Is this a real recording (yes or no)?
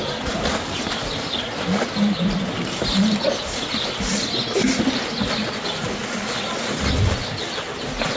yes